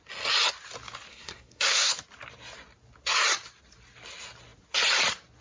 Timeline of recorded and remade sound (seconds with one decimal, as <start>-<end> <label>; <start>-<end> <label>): 0.0-1.1 recorded; 1.1-1.9 remade; 1.9-5.4 recorded